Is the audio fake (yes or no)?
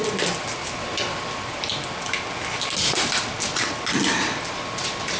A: no